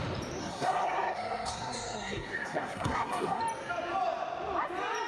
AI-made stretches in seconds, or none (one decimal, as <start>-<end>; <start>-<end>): 0.4-3.4